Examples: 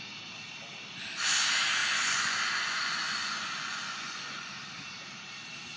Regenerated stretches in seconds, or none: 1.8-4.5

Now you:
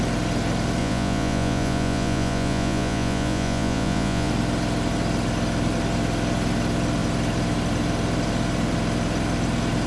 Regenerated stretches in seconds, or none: 0.8-4.3

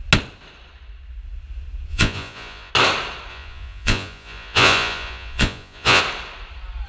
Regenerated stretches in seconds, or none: 1.9-2.7; 3.3-6.0